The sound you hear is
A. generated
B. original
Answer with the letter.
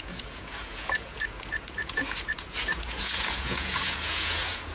A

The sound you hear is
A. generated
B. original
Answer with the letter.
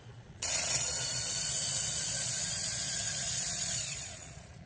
A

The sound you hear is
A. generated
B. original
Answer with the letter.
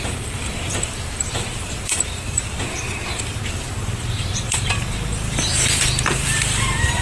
A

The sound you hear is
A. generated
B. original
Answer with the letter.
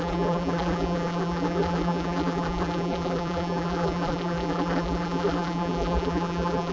A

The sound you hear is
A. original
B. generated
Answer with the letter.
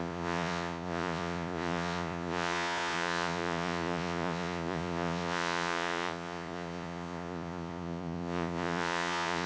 B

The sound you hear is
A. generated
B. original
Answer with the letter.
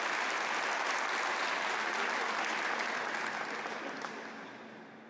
B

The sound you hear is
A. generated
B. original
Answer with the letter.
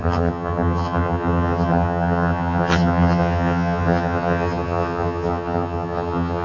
A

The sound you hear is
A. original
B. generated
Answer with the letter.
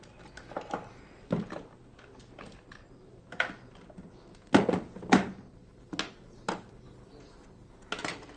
A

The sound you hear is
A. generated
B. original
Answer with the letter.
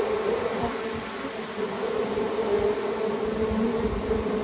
B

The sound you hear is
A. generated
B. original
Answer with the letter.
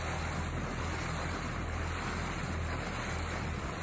B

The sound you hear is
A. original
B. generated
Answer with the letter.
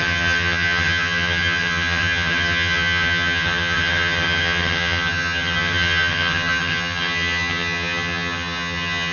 B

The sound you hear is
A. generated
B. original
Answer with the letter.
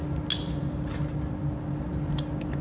B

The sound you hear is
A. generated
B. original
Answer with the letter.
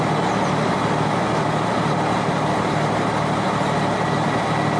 B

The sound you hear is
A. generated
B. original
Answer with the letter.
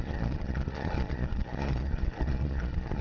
A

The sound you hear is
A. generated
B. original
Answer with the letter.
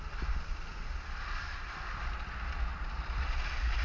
B